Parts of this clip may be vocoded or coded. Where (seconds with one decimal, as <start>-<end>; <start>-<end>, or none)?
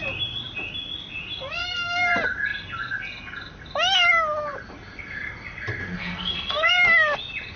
1.6-2.1; 5.8-6.7